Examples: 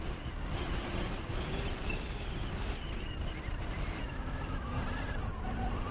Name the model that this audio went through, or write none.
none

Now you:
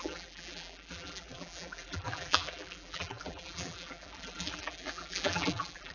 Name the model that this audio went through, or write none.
vocoder, BigVGAN v2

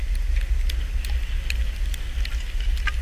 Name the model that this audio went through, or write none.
none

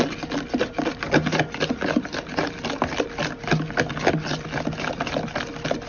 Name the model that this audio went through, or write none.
none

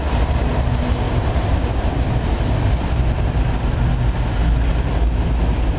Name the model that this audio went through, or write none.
none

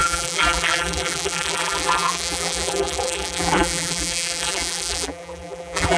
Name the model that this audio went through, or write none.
vocoder, BigVGAN v2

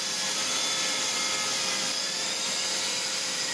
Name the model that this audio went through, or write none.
vocoder, BigVGAN v2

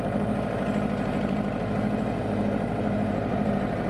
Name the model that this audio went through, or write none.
vocoder, BigVGAN v2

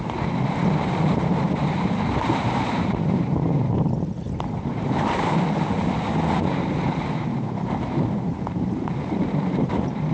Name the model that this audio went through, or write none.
vocoder, BigVGAN v2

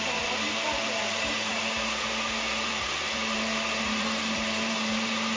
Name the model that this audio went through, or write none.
vocoder, BigVGAN v2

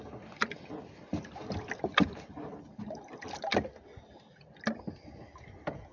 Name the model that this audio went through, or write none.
none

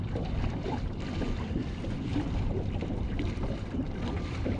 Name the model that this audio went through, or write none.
vocoder, BigVGAN v2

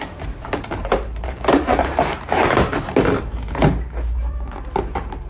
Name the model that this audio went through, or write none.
vocoder, BigVGAN v2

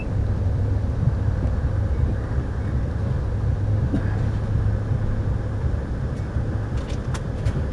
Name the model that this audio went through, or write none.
none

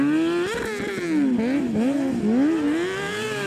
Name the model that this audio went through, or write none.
none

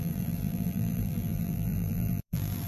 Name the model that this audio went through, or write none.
vocoder, BigVGAN v2